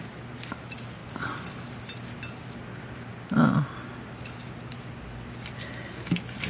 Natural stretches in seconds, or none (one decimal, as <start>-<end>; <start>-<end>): 0.0-6.5

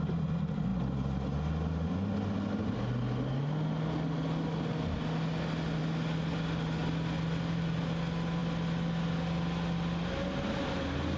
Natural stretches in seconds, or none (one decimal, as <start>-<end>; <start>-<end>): 0.0-11.2

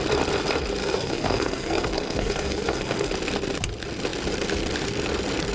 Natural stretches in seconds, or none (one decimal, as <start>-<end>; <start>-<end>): 0.0-0.8; 3.1-5.5

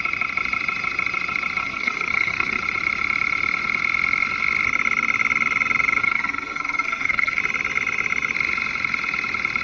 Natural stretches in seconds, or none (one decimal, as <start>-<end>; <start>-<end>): 0.0-1.6; 2.6-6.0; 7.4-9.6

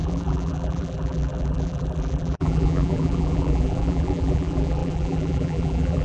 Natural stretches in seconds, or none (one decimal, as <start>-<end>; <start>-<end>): none

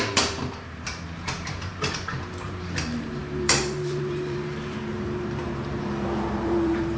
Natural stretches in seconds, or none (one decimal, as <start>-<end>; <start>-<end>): none

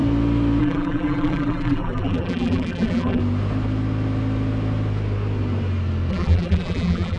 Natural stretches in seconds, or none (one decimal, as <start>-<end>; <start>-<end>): 0.0-0.6; 3.2-6.1

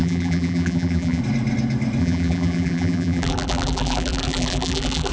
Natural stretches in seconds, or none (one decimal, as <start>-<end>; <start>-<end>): 1.2-2.0